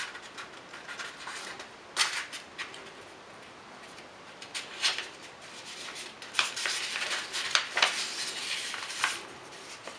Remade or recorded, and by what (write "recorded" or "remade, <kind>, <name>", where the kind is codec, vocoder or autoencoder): remade, vocoder, BigVGAN v2